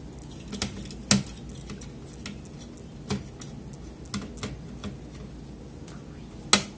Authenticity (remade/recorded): recorded